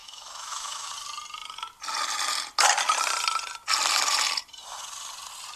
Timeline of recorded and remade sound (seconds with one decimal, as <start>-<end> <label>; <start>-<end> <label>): 0.0-0.9 remade; 0.9-5.6 recorded